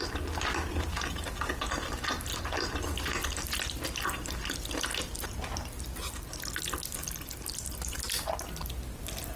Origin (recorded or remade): recorded